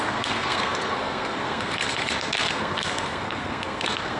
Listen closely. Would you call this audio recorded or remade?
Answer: remade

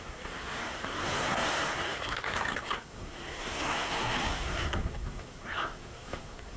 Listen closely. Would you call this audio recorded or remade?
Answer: remade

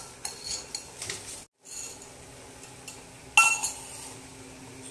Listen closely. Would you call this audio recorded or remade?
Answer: recorded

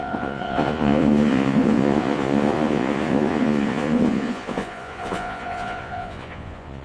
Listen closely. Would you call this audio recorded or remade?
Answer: remade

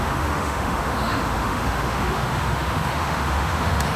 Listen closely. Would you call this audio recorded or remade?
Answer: remade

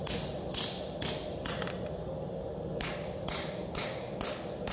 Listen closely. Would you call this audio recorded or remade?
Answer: recorded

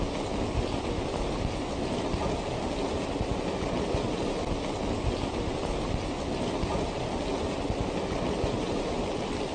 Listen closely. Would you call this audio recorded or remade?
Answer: recorded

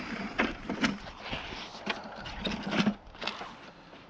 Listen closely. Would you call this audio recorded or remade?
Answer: recorded